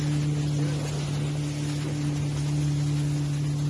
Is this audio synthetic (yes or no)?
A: no